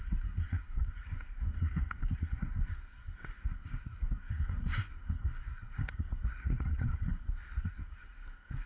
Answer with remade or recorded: remade